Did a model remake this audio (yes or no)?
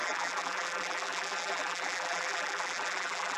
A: yes